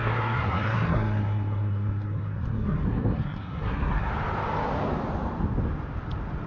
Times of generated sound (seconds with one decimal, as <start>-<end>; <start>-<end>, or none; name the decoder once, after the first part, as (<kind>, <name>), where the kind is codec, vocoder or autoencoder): 0.0-4.1 (codec, SNAC)